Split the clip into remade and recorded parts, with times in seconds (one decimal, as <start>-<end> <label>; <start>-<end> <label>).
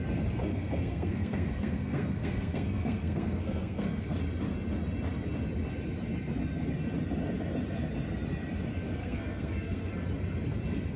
0.0-0.4 recorded; 0.4-4.2 remade; 4.2-9.0 recorded; 9.0-9.9 remade; 9.9-11.0 recorded